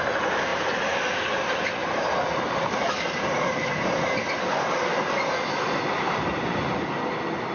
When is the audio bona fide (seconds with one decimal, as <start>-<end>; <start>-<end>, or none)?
0.0-7.5